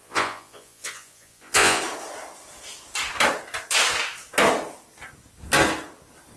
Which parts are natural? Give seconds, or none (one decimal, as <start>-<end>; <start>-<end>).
1.8-6.4